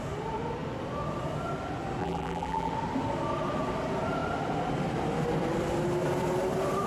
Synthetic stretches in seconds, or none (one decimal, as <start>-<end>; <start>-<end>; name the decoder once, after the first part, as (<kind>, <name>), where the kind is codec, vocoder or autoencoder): 2.0-2.7 (vocoder, BigVGAN v2)

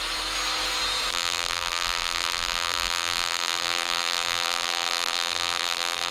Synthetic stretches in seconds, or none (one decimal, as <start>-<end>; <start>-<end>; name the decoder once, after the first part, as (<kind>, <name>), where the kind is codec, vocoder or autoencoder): 1.1-6.1 (vocoder, BigVGAN v2)

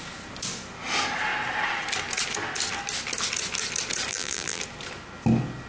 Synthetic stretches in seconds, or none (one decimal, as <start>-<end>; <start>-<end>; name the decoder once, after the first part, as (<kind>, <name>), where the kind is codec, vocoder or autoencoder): 4.1-4.6 (vocoder, BigVGAN v2)